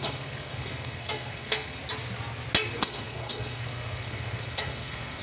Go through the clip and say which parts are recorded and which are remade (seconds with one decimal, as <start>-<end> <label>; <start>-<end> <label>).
0.0-1.8 remade; 1.8-2.7 recorded; 2.7-5.2 remade